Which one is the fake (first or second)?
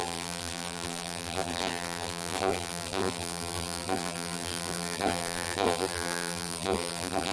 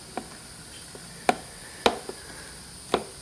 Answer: first